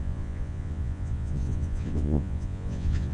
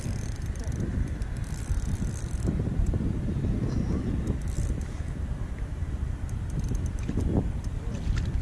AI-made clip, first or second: first